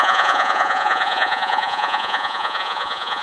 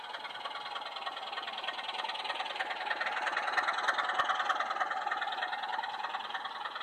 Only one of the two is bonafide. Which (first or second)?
second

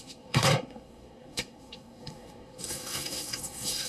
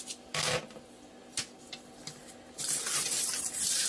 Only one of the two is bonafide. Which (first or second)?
second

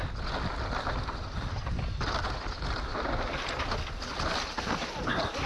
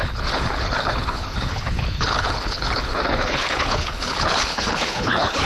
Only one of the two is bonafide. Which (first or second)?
first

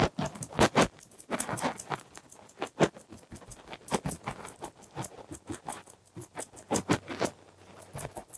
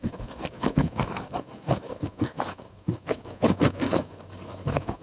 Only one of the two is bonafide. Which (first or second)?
first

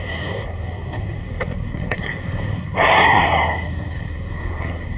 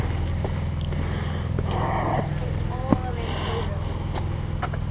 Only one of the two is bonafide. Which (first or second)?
second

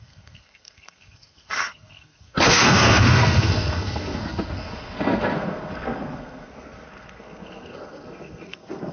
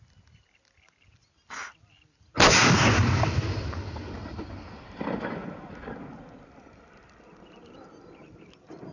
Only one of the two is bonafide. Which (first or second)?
second